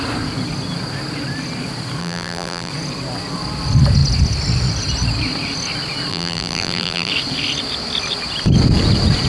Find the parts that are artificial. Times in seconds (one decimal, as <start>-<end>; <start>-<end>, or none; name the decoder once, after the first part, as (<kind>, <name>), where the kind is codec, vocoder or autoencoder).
2.0-2.7 (vocoder, BigVGAN v2); 6.1-7.1